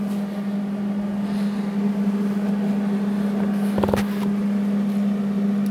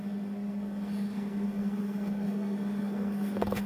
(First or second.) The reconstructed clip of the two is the second